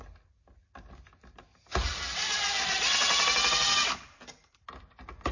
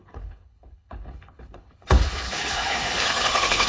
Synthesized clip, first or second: second